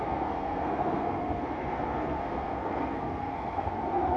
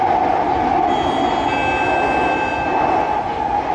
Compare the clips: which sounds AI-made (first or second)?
first